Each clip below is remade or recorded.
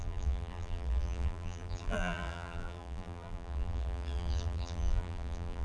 remade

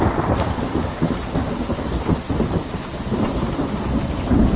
recorded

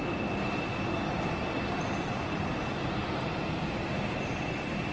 recorded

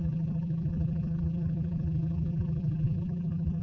remade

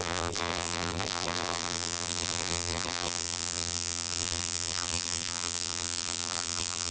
remade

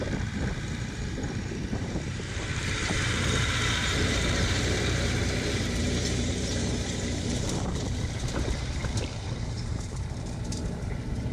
remade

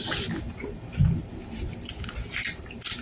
recorded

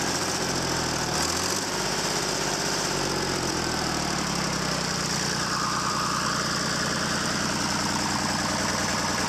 remade